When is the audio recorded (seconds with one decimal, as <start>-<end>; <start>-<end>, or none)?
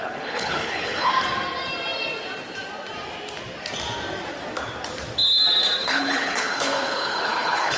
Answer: 1.1-5.8